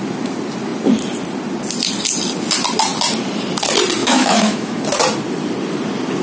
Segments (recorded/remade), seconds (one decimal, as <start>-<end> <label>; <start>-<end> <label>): 0.0-4.0 recorded; 4.0-4.8 remade; 4.8-6.2 recorded